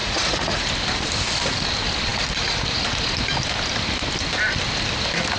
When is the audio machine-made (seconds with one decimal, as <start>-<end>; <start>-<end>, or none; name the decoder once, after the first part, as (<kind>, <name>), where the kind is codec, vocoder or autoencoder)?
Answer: 0.0-0.7 (vocoder, Vocos)